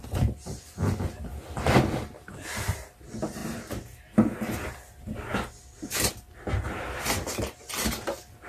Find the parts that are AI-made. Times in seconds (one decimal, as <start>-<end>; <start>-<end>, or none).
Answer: none